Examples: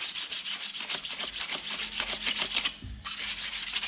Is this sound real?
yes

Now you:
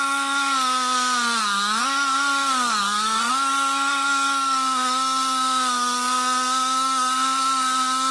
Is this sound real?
no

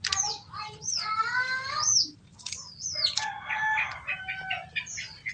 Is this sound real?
yes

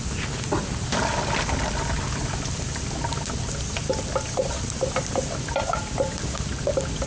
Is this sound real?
yes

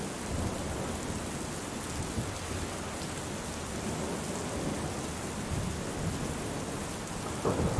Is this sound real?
yes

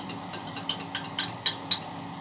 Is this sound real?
yes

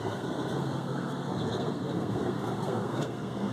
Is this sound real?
no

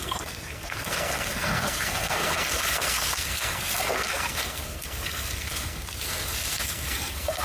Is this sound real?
no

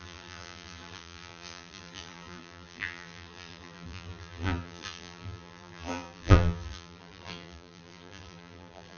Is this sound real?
no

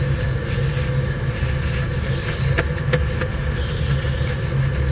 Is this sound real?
yes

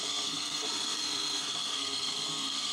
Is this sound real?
no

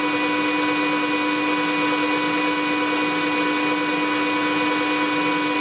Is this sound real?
yes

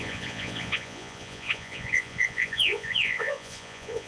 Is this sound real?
no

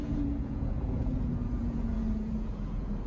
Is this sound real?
no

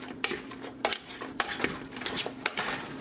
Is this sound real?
no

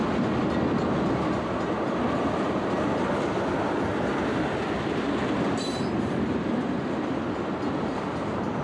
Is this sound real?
yes